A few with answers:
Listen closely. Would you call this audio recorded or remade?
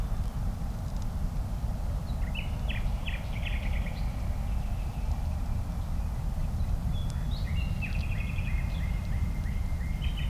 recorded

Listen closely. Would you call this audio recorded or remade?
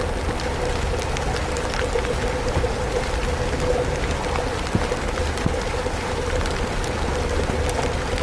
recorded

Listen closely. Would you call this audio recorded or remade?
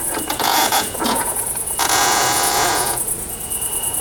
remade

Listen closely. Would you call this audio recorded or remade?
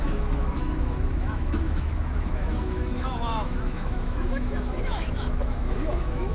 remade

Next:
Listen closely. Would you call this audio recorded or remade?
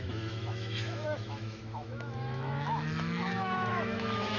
remade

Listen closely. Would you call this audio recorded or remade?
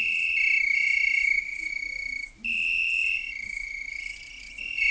recorded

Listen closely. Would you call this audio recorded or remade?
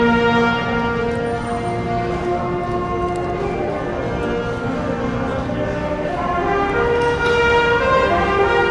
recorded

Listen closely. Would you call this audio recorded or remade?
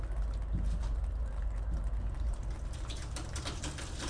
recorded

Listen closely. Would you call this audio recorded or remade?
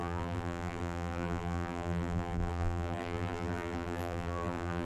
remade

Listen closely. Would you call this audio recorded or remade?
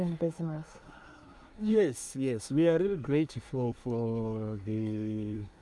remade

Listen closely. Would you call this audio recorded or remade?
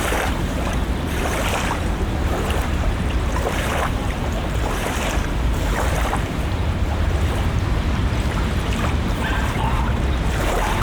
remade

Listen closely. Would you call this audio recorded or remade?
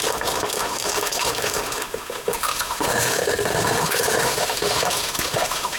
remade